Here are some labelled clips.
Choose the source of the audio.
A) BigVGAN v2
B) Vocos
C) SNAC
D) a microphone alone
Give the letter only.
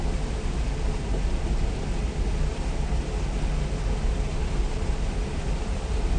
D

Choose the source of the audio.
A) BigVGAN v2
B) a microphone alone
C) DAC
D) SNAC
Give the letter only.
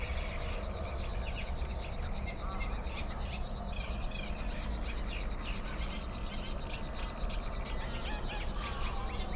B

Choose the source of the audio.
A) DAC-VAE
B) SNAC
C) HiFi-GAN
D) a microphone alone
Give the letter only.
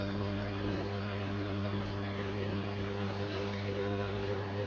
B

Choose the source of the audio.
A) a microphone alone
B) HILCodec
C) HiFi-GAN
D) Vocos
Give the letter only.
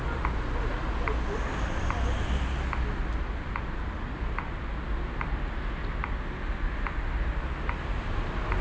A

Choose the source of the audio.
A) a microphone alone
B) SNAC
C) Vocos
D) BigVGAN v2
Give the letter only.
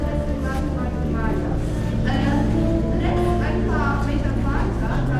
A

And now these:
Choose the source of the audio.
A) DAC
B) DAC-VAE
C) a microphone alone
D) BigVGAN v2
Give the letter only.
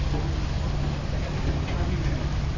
C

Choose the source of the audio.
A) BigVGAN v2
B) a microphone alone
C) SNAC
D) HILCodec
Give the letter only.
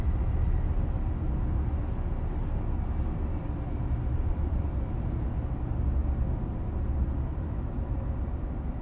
B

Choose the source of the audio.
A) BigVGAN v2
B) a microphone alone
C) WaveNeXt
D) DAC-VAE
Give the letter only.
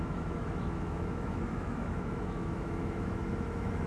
D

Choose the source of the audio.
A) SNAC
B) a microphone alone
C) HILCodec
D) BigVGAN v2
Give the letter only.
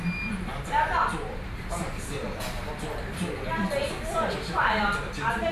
D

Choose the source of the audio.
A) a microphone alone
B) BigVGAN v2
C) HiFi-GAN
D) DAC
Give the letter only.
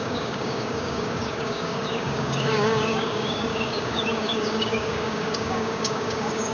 D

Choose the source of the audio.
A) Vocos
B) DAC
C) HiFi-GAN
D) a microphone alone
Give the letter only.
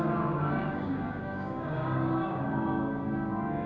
B